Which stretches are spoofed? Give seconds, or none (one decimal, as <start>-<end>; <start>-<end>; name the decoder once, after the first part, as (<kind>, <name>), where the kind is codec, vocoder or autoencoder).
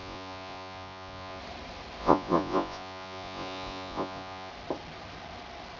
0.0-1.4 (vocoder, Vocos); 2.0-4.5